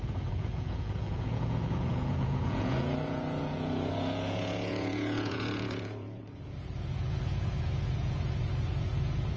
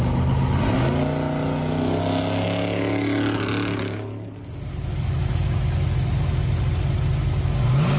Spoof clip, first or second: first